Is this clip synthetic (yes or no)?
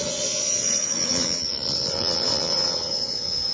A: yes